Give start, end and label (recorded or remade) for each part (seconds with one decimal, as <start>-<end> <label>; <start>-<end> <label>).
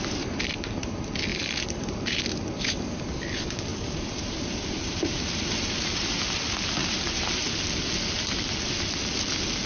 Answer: 0.0-1.3 recorded; 1.3-2.2 remade; 2.2-3.7 recorded; 3.7-6.2 remade; 6.2-6.8 recorded; 6.8-7.6 remade; 7.6-9.7 recorded